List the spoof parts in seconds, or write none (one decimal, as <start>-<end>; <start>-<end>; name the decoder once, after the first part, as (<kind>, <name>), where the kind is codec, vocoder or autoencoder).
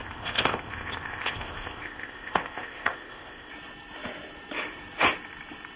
0.0-3.5 (codec, ZipCodec)